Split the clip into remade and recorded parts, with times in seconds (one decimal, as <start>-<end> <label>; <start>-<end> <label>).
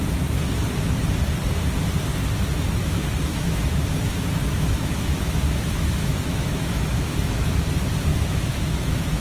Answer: 0.0-2.8 recorded; 2.8-7.5 remade; 7.5-8.1 recorded; 8.1-9.2 remade